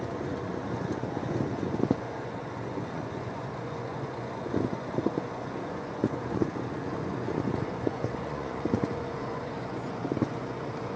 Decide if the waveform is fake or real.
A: fake